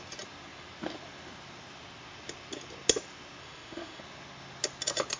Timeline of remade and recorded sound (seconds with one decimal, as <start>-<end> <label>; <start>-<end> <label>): 0.0-3.4 recorded; 3.4-4.0 remade; 4.0-5.2 recorded